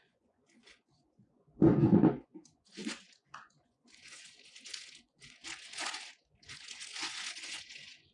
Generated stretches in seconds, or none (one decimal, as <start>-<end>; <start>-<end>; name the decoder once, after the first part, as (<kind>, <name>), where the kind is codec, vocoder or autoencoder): 0.0-8.1 (vocoder, Vocos)

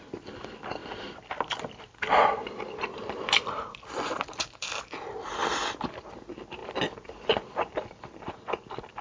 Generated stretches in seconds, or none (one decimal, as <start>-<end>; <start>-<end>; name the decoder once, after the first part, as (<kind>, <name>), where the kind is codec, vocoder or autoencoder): 0.8-4.3 (vocoder, BigVGAN v2); 5.4-6.1; 6.6-8.3

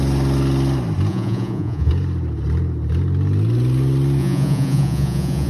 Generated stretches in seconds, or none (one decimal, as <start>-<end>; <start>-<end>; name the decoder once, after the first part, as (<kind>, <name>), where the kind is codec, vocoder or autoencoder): 1.1-1.9 (vocoder, Vocos); 4.2-5.5

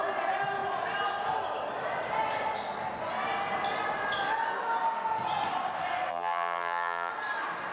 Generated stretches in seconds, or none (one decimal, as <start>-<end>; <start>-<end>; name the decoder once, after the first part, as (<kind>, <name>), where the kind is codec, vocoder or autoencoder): 6.1-7.1 (vocoder, BigVGAN v2)